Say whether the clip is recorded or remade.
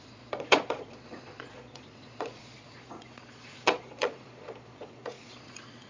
remade